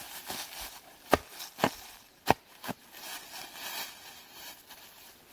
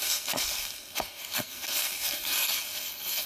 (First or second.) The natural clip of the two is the first